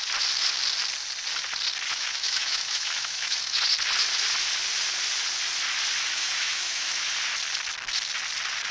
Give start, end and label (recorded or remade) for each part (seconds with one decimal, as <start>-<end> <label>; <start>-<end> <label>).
0.0-1.9 recorded; 1.9-3.6 remade; 3.6-6.1 recorded; 6.1-7.1 remade; 7.1-8.7 recorded